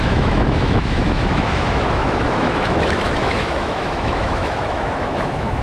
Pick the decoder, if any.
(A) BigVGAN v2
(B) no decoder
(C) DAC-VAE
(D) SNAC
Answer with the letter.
C